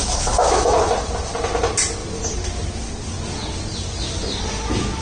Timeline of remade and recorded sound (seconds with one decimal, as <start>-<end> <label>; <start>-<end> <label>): 0.0-0.8 remade; 0.8-5.0 recorded